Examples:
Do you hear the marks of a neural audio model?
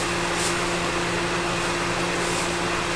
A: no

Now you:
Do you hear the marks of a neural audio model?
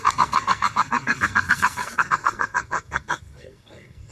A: yes